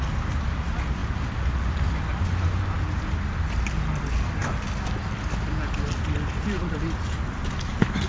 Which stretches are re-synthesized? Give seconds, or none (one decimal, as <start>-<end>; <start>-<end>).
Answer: none